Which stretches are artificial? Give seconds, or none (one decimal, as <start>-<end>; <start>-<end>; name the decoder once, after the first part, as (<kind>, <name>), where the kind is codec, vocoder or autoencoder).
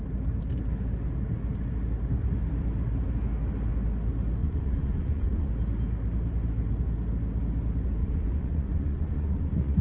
4.4-5.5 (vocoder, Vocos); 8.0-9.8